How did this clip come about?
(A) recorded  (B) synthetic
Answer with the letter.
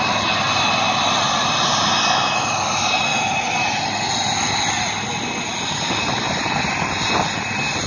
A